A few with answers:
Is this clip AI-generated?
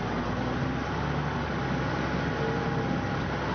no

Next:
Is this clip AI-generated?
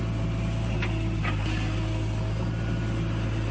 no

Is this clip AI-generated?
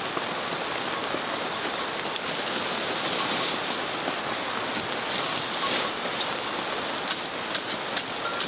no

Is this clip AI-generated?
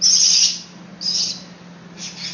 no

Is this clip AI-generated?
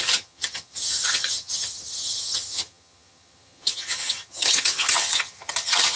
yes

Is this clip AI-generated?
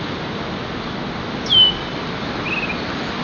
no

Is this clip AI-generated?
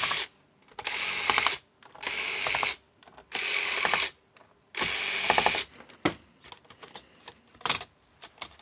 no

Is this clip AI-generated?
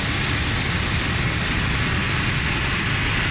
no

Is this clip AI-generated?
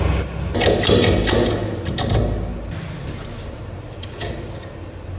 no